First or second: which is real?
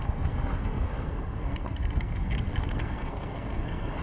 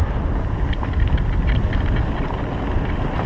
second